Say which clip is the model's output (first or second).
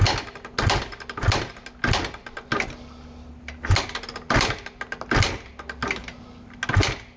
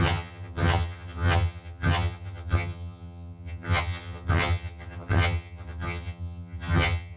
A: second